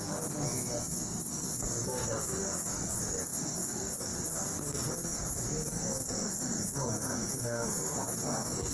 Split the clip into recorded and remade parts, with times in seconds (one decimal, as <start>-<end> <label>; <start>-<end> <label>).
0.0-8.7 remade